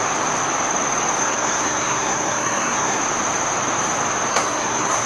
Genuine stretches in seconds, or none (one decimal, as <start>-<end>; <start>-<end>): 0.0-1.2; 3.0-4.3